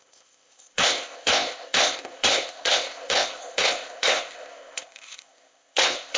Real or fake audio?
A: fake